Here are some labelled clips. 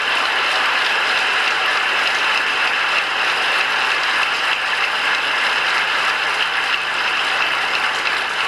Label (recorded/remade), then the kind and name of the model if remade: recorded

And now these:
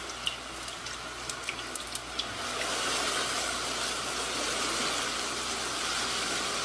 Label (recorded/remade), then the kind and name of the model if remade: recorded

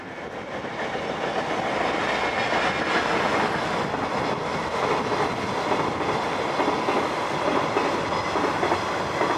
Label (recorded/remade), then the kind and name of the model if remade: recorded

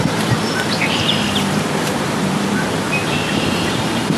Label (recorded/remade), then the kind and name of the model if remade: remade, vocoder, BigVGAN v2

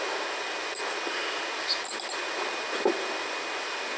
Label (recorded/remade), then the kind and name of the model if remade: recorded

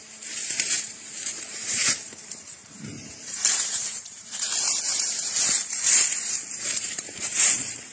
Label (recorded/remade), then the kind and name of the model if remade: remade, vocoder, BigVGAN v2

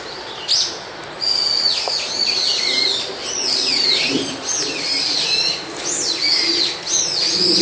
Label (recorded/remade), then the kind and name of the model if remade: recorded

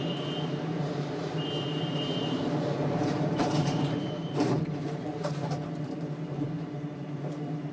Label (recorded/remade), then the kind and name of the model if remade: remade, vocoder, BigVGAN v2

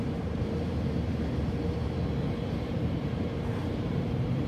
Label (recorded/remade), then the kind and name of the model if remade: remade, vocoder, BigVGAN v2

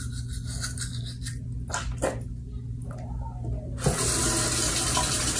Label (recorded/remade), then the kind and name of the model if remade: recorded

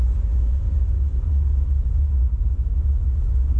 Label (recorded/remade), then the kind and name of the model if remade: remade, vocoder, BigVGAN v2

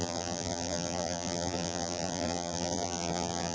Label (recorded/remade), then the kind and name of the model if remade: remade, vocoder, BigVGAN v2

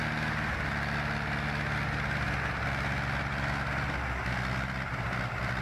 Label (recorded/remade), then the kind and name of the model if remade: recorded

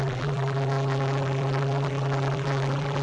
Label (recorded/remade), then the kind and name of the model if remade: remade, vocoder, BigVGAN v2